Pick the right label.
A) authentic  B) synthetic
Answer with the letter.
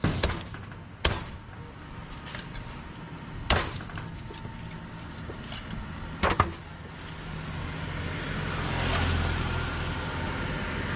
A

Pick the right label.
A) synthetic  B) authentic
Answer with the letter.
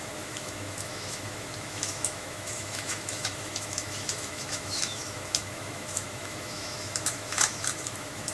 A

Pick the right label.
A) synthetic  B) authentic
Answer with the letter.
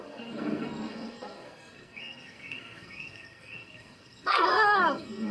A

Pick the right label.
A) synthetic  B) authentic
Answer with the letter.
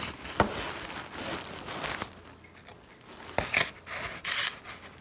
B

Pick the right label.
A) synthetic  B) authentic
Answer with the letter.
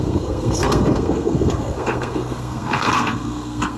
A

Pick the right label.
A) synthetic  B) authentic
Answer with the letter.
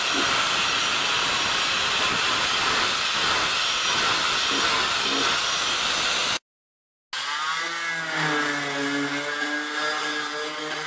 B